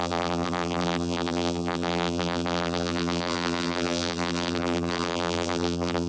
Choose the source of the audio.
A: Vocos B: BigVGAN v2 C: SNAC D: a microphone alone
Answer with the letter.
B